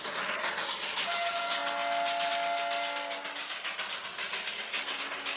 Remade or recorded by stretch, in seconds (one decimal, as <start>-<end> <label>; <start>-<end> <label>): 0.0-5.4 recorded